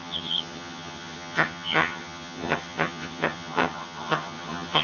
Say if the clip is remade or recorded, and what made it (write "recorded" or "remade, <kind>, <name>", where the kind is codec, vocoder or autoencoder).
remade, vocoder, HiFi-GAN